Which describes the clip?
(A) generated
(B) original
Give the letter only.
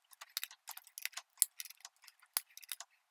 B